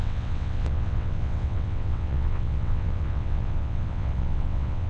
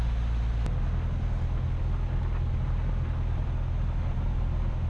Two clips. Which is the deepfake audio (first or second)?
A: first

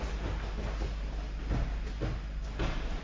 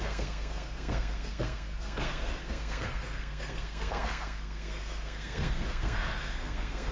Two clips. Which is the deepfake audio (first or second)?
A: second